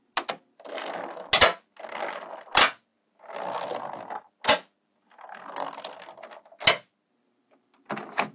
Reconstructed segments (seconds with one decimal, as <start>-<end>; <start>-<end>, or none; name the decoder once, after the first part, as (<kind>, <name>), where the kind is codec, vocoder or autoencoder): none